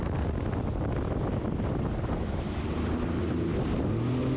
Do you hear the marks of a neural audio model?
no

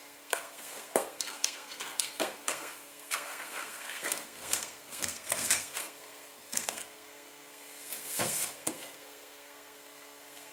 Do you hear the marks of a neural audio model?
yes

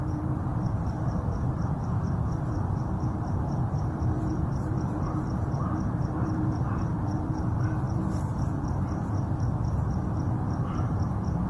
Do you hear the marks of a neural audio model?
yes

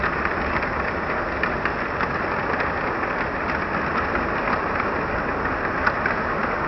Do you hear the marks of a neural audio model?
no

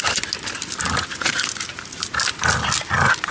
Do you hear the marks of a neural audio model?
no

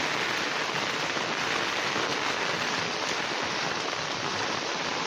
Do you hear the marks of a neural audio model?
no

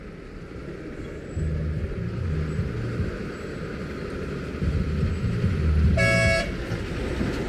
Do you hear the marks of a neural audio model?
no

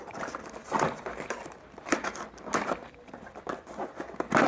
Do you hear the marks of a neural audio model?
no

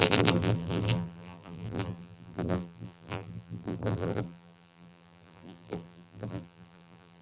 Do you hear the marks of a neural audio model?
yes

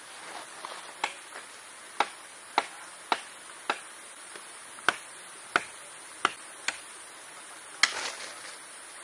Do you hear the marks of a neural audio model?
no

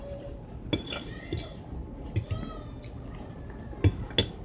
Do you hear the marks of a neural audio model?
no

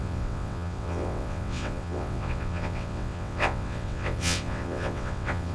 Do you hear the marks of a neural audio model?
yes